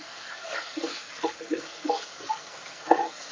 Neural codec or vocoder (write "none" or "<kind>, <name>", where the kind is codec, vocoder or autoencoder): codec, SNAC